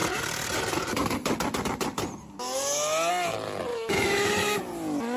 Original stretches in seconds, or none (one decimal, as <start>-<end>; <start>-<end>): 0.0-3.7; 4.6-5.2